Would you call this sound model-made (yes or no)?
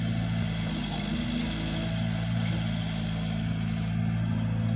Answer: no